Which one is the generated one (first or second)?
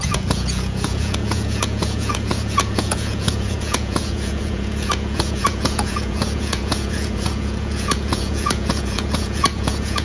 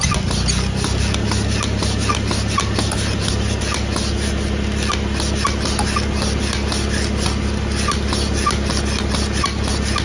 first